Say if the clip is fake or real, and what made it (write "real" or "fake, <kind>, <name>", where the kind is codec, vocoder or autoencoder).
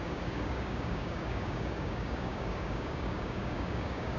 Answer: fake, codec, DAC